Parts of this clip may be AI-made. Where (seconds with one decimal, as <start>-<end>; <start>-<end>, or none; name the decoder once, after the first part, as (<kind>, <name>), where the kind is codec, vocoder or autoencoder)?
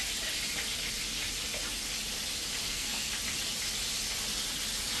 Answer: 2.6-3.1 (codec, SNAC)